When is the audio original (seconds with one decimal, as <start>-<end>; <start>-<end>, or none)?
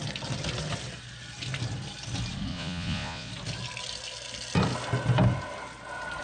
0.0-2.5; 3.3-6.2